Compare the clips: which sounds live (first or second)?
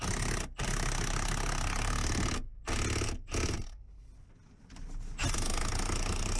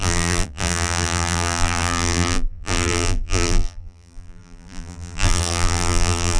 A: first